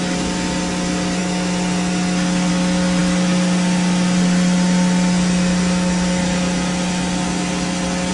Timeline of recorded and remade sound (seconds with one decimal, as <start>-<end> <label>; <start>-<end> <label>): 0.0-8.1 recorded